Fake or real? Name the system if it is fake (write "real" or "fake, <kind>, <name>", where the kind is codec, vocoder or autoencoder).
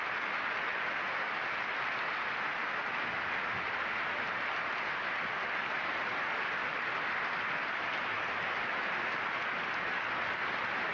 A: real